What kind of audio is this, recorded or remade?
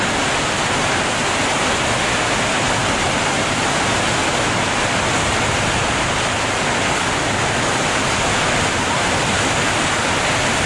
recorded